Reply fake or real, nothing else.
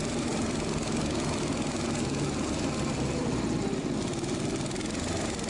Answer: real